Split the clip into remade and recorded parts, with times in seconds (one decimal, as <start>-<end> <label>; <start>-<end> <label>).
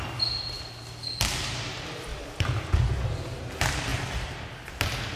0.0-2.1 recorded; 2.1-2.7 remade; 2.7-5.2 recorded